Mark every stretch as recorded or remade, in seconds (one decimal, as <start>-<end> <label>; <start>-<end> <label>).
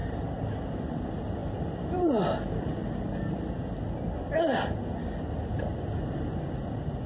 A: 0.0-0.7 remade; 0.7-7.1 recorded